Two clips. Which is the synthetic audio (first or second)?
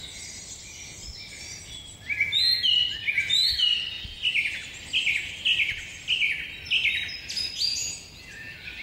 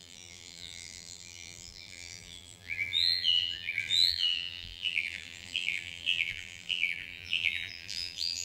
second